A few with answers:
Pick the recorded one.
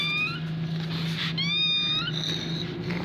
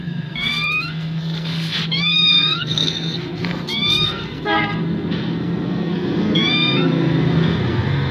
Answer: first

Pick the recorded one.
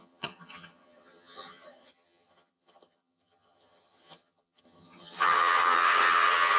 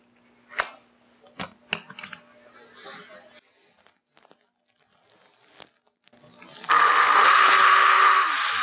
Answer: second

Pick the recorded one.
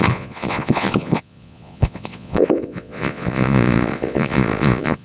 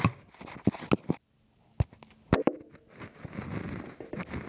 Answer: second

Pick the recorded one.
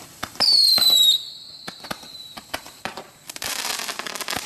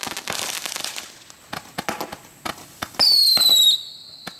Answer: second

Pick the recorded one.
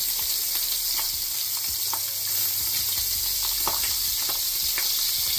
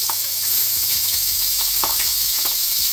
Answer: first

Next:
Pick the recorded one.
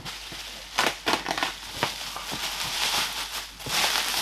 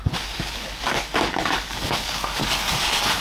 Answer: first